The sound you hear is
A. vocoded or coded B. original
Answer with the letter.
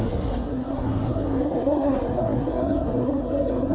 A